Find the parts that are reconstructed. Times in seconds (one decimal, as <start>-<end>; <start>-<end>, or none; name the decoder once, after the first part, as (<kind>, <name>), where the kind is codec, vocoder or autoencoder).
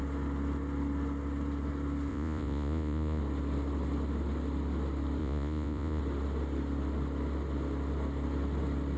2.1-3.2 (vocoder, Vocos); 5.2-6.0